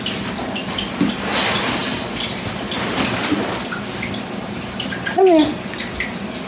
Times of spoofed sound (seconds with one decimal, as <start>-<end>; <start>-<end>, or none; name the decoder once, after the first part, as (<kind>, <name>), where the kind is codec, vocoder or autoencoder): none

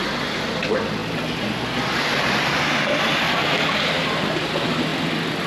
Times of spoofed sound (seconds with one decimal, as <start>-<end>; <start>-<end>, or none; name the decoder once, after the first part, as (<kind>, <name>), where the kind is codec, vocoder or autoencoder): 0.0-0.6 (vocoder, BigVGAN v2); 4.9-5.5

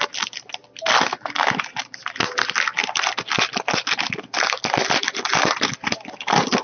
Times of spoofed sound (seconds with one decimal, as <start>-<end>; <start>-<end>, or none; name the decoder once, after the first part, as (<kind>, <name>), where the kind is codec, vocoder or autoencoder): none

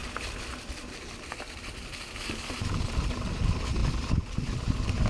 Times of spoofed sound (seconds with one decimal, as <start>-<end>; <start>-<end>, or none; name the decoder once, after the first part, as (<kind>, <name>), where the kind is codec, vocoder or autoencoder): none

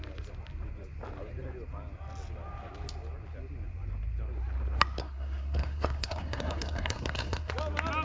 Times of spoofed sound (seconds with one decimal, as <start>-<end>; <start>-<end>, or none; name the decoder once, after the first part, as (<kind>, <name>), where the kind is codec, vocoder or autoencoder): 5.0-7.5 (codec, SNAC)